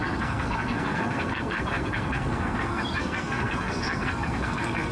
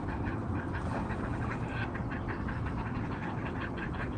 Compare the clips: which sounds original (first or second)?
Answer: second